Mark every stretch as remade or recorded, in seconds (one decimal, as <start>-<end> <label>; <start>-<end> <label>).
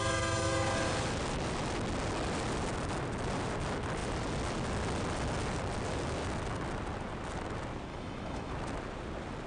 0.0-7.9 recorded; 7.9-8.5 remade; 8.5-9.5 recorded